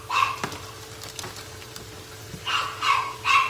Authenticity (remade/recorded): recorded